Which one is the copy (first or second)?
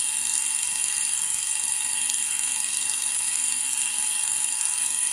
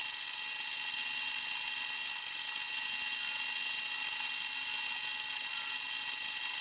first